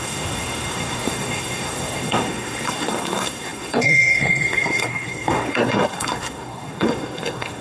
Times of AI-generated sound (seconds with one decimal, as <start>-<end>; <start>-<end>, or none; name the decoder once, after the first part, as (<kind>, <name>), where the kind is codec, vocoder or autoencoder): 0.0-7.6 (codec, SNAC)